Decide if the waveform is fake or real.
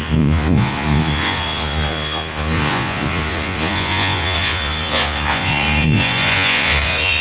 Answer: fake